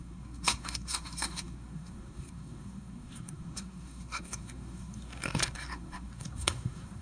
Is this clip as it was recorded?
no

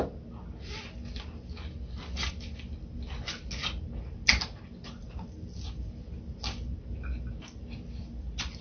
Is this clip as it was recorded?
yes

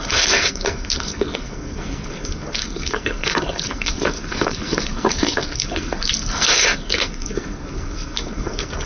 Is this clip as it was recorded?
no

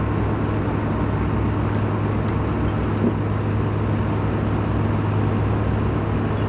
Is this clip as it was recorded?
yes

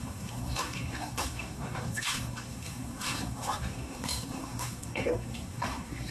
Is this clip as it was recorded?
no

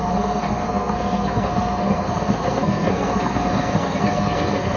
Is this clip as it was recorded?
no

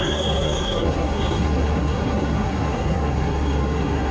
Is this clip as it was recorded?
no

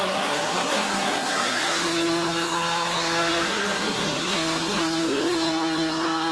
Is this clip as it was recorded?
no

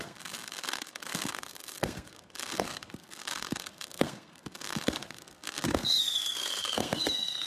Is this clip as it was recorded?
no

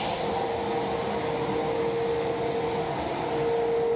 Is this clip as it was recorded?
yes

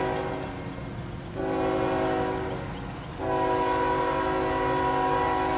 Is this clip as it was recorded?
yes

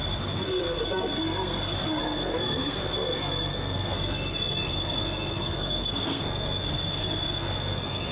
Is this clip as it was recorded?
no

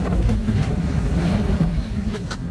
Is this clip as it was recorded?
no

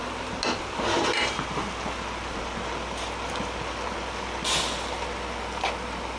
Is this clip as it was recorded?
yes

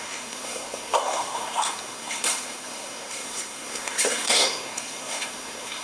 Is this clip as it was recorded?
no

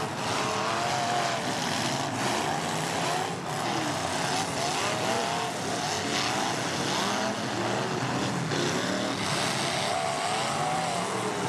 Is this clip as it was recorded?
yes